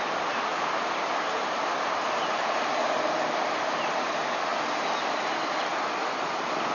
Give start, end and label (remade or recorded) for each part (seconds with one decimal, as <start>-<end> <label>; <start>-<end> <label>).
0.0-0.5 recorded; 0.5-4.0 remade; 4.0-6.7 recorded